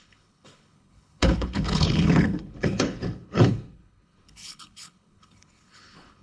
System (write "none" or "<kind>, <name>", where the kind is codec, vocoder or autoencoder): codec, HILCodec